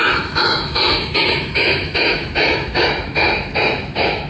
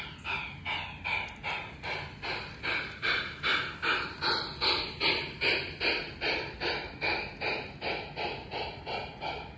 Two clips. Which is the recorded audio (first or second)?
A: second